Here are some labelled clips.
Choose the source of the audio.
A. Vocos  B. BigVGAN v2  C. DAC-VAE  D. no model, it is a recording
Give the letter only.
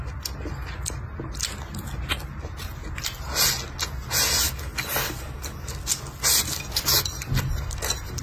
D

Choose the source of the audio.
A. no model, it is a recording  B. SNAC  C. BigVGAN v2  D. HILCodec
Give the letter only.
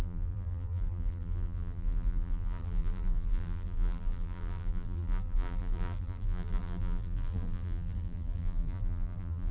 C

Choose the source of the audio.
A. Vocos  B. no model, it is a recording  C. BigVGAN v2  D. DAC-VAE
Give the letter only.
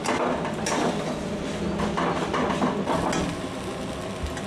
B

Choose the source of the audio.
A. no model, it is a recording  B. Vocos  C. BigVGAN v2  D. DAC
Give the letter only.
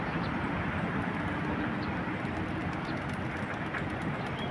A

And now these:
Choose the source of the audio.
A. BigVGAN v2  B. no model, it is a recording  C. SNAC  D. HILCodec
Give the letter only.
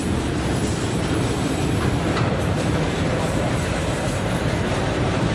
A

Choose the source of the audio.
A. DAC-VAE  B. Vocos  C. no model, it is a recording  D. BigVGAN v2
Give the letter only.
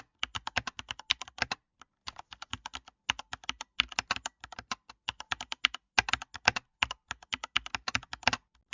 C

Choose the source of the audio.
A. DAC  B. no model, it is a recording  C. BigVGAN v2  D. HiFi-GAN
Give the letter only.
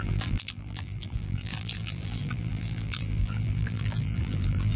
C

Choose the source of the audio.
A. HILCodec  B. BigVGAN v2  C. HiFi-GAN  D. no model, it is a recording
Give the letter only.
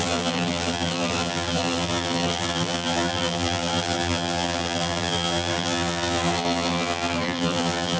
B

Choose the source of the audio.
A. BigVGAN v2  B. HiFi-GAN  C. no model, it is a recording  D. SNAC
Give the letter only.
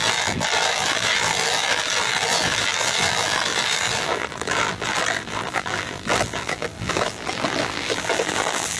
A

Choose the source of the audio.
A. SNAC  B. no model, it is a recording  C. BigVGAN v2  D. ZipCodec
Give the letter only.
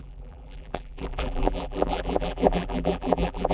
C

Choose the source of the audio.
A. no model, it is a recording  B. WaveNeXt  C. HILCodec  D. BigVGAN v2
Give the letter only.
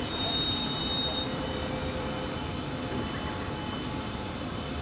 D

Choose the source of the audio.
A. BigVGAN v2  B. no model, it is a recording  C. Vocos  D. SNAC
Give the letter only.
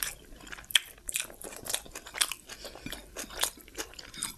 A